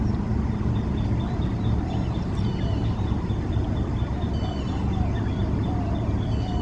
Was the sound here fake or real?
fake